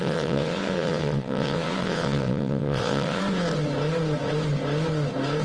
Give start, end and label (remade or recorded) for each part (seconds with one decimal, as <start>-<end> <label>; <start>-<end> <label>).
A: 0.0-3.2 remade; 3.2-5.4 recorded